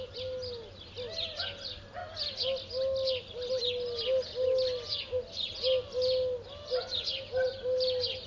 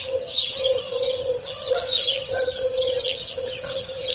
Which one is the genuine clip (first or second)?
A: first